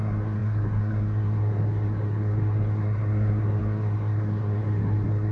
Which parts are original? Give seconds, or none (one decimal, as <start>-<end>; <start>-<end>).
none